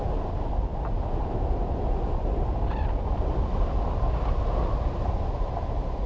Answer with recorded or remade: recorded